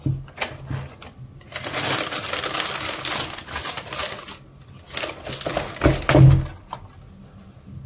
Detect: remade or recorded recorded